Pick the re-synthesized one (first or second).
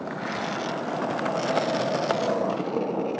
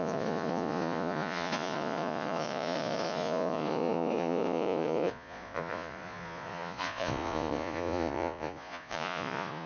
second